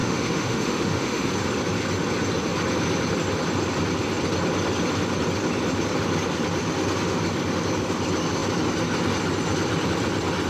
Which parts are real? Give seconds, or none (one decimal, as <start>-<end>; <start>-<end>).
1.3-10.5